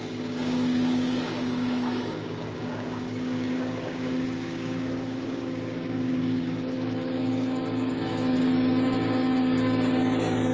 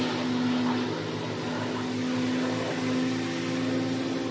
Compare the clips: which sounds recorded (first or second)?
second